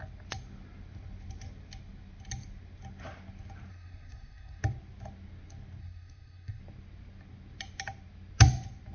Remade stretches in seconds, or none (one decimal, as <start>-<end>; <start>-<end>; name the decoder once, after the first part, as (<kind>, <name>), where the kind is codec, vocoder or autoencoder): 3.7-4.6 (codec, SNAC); 5.8-6.6